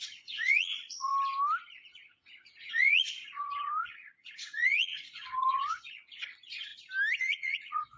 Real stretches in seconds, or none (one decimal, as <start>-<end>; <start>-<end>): 1.1-1.6; 6.7-7.2